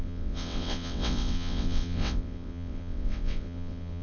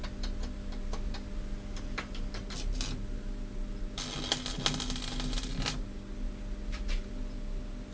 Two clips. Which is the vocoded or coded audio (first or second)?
first